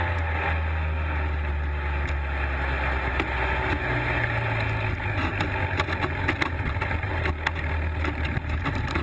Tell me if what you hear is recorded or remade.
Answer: recorded